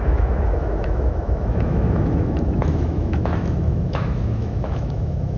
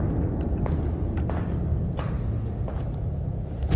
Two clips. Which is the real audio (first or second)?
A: second